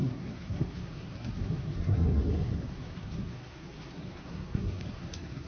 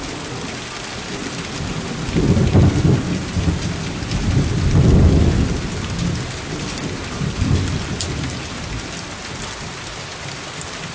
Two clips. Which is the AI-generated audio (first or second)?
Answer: first